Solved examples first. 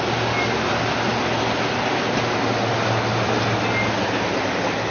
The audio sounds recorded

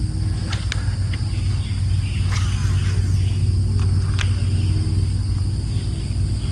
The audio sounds recorded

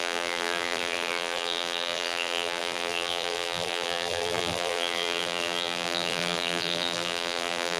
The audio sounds remade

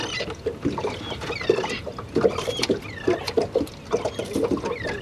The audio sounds recorded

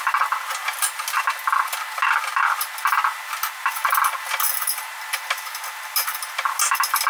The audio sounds recorded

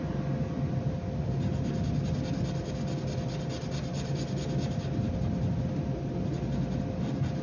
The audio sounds recorded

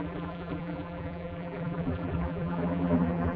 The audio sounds remade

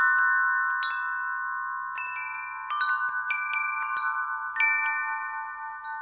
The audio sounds recorded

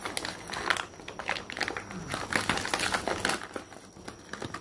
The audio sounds recorded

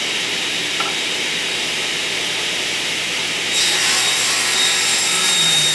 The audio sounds remade